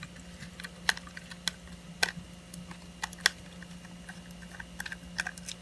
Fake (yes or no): no